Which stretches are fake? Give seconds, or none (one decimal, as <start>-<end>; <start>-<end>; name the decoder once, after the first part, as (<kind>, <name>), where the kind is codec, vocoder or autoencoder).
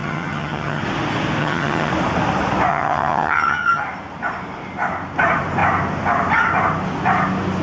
0.0-0.8 (vocoder, HiFi-GAN); 1.4-1.9; 2.7-3.8